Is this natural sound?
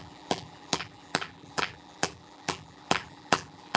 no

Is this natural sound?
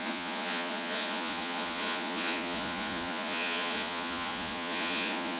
no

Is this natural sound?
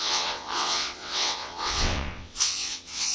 no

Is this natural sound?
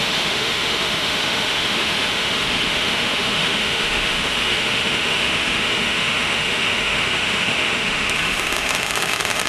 no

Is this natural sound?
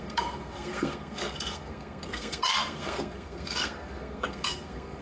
no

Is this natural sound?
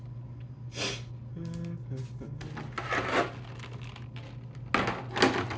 yes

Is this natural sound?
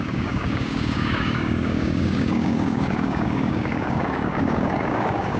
no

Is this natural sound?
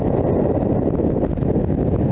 yes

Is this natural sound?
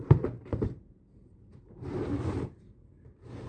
no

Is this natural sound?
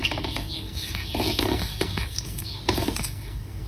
no